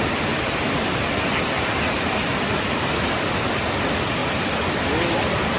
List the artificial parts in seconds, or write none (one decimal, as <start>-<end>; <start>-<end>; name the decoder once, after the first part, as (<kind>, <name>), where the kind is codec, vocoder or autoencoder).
none